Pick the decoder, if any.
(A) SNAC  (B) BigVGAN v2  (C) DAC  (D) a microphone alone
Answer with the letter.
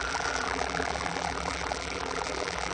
B